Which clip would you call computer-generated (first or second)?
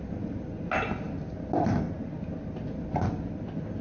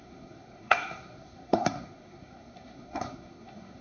second